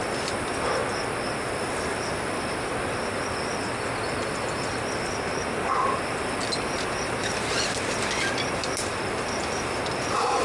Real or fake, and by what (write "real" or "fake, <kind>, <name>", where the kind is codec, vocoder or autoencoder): real